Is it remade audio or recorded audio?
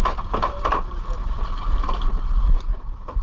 remade